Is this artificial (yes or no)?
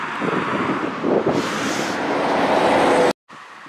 no